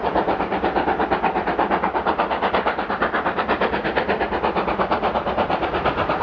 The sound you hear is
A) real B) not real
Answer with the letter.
B